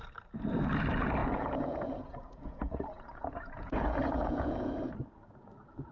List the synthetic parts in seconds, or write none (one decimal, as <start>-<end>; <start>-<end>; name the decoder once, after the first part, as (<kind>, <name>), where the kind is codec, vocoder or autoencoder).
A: 1.2-4.7 (vocoder, Vocos)